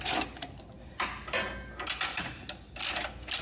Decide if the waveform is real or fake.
real